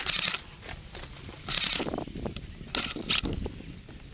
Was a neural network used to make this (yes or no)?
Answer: no